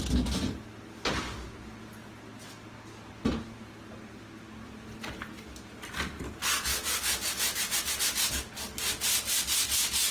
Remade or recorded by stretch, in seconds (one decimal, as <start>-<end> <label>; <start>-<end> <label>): 0.0-10.1 recorded